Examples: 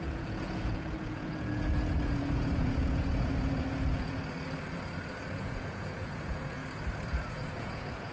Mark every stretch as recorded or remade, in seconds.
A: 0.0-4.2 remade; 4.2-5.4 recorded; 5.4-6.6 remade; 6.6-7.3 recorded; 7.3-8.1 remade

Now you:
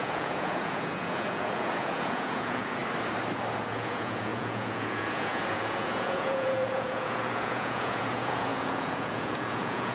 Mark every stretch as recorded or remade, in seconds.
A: 0.0-2.8 remade; 2.8-3.5 recorded; 3.5-9.9 remade